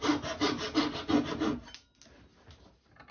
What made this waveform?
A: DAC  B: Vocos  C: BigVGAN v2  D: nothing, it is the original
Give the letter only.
D